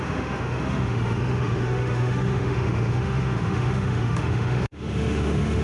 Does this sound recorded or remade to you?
remade